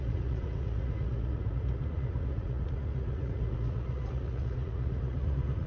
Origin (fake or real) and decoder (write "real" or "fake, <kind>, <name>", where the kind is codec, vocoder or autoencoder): fake, vocoder, Vocos